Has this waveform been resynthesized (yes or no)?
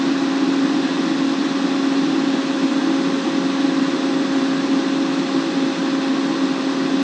no